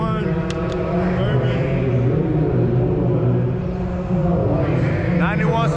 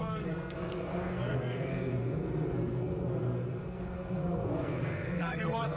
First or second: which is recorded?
first